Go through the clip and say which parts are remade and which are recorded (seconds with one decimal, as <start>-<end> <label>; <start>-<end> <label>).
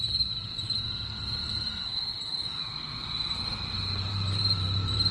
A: 0.0-4.1 recorded; 4.1-5.1 remade